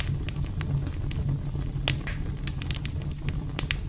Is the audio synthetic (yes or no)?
no